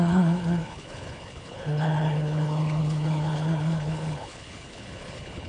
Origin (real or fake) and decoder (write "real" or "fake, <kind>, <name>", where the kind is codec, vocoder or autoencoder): fake, codec, HILCodec